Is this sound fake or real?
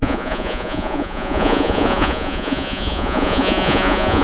fake